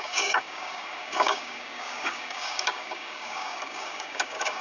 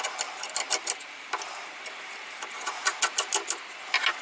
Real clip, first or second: second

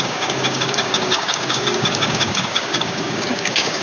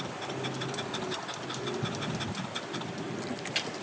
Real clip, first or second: second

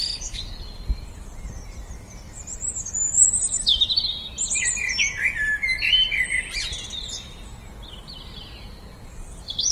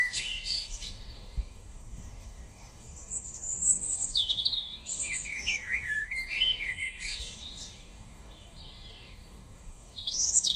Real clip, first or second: first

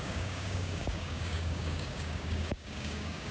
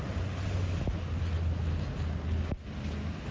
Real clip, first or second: second